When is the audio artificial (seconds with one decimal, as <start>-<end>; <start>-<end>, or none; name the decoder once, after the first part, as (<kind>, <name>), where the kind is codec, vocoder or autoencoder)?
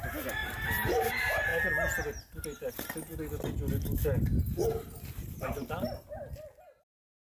none